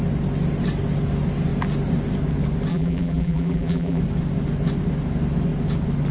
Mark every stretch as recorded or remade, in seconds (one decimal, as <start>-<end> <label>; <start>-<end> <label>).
0.0-2.7 recorded; 2.7-4.0 remade; 4.0-6.1 recorded